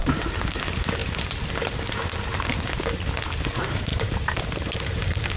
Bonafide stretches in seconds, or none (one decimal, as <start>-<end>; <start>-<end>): 1.0-3.4